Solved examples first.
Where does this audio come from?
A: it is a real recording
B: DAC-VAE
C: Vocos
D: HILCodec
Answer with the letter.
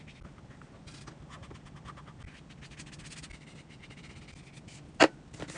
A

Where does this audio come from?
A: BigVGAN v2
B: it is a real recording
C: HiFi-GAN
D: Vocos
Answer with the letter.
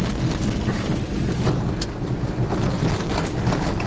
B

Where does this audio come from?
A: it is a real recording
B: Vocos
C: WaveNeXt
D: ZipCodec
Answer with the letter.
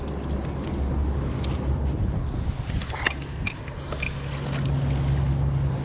A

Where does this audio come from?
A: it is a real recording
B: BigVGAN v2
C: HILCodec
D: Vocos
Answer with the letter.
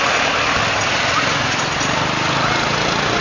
A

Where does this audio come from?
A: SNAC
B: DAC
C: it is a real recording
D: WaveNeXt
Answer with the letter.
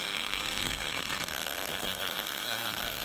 A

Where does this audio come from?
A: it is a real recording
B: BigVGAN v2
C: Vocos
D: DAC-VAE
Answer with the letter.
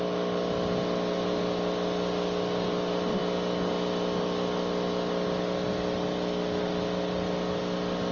A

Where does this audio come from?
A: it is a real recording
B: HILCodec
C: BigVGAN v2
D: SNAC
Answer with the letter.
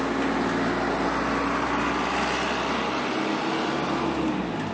A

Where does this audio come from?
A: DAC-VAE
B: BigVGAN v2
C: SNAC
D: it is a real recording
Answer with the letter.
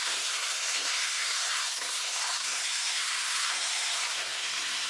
C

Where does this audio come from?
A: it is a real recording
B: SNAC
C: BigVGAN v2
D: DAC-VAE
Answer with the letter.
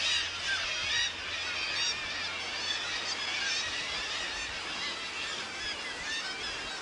A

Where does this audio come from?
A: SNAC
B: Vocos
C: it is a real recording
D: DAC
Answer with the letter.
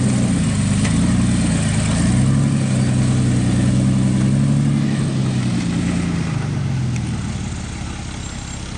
C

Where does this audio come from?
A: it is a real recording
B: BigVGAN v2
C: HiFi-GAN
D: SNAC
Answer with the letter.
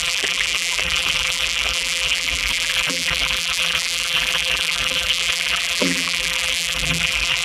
B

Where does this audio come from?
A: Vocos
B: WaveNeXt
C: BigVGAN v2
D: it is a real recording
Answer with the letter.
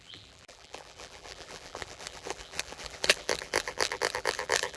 C